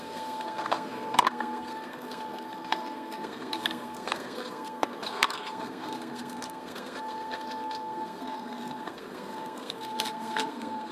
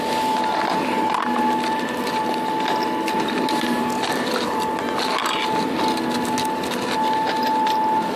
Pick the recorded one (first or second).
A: second